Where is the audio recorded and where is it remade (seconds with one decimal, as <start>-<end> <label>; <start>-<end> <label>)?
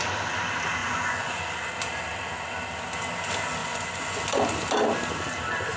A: 0.0-0.8 recorded; 0.8-1.4 remade; 1.4-3.6 recorded; 3.6-4.2 remade; 4.2-5.8 recorded